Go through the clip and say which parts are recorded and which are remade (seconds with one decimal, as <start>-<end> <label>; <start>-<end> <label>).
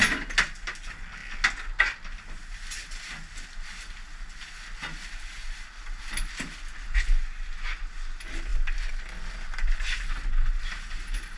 0.0-11.4 recorded